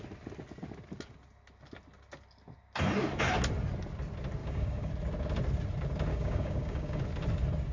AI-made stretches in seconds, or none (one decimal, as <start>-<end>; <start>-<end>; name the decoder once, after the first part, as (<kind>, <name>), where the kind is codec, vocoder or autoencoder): 4.4-4.9 (codec, DAC); 6.1-7.0